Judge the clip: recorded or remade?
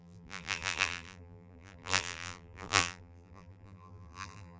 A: remade